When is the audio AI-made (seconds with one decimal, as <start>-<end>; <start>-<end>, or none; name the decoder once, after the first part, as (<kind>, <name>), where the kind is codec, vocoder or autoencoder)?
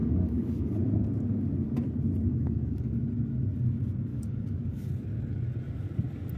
0.0-0.8 (codec, DAC); 2.3-3.0; 4.1-4.9